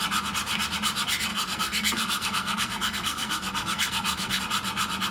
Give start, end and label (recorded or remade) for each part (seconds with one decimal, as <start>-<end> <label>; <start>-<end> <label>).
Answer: 0.0-1.3 recorded; 1.3-4.4 remade; 4.4-5.1 recorded